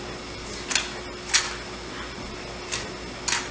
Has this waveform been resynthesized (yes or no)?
no